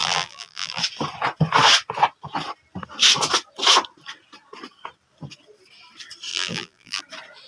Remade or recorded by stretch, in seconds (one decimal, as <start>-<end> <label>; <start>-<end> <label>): 0.0-0.8 remade; 0.8-6.3 recorded; 6.3-7.0 remade; 7.0-7.5 recorded